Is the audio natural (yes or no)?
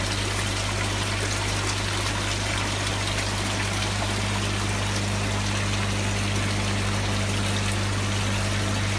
yes